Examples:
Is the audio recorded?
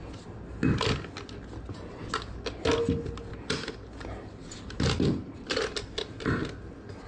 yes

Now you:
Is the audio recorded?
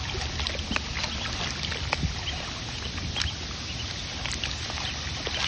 yes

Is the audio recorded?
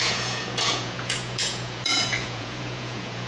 no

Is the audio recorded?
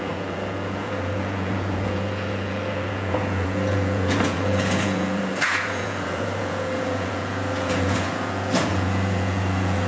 no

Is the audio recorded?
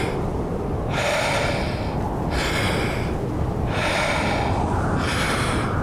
yes